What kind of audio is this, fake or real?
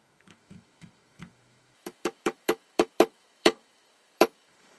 fake